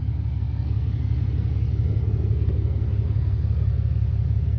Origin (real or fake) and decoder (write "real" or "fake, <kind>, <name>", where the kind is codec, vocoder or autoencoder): fake, codec, SNAC